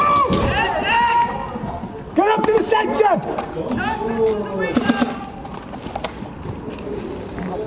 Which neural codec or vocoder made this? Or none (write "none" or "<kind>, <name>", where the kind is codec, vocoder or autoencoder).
none